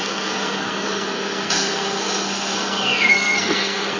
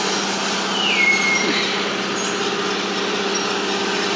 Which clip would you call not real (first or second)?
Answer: first